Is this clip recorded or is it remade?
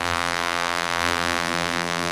remade